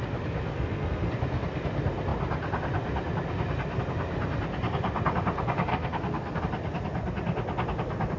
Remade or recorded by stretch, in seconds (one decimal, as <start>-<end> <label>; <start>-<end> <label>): 0.0-0.5 recorded; 0.5-1.1 remade; 1.1-5.7 recorded; 5.7-6.4 remade; 6.4-8.2 recorded